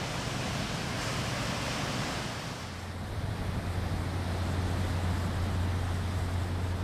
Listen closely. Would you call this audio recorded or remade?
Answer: recorded